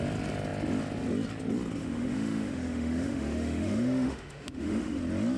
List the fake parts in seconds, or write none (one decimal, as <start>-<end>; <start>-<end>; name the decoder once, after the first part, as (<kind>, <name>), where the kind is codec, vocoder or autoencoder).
1.8-5.0 (autoencoder, DAC-VAE)